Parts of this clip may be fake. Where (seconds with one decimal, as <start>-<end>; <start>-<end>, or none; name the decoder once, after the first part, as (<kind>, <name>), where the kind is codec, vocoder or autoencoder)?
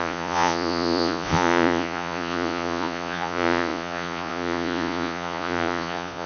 0.0-6.3 (vocoder, Vocos)